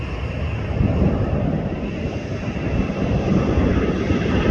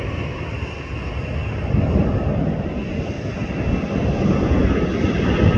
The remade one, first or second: first